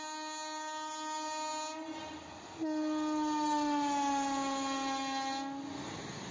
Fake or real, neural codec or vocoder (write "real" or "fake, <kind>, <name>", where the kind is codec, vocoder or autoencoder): real